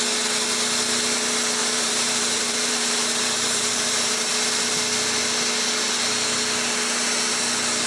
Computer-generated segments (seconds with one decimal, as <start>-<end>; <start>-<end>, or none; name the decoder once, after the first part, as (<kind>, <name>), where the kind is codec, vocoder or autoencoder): 1.6-4.3 (vocoder, BigVGAN v2)